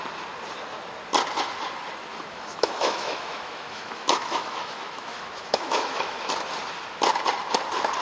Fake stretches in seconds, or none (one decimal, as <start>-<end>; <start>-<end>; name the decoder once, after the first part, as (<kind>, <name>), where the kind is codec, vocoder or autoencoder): 2.1-6.3 (autoencoder, DAC-VAE)